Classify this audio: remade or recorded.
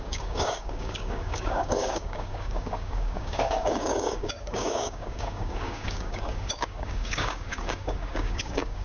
remade